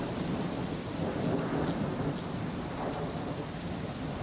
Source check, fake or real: real